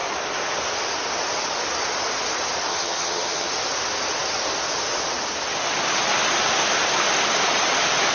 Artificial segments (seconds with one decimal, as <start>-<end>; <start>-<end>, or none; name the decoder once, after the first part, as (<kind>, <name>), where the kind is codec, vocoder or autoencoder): 2.7-3.5 (vocoder, HiFi-GAN)